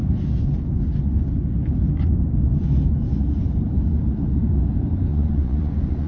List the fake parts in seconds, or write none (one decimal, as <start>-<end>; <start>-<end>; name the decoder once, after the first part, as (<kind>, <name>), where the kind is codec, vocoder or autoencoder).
5.1-6.1 (vocoder, Vocos)